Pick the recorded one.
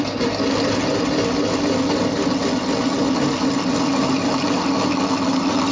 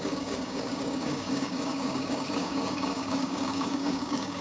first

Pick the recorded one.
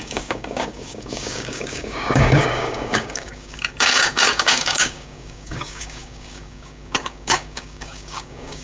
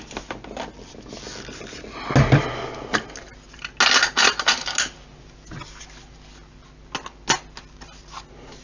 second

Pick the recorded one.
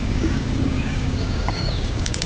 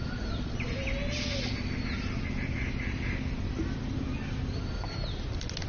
second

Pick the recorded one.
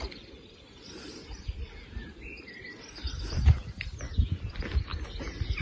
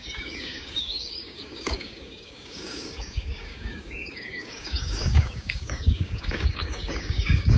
first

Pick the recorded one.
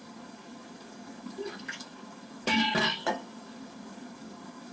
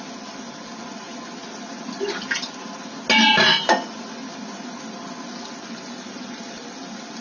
second